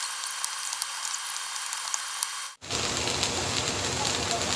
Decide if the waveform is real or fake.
real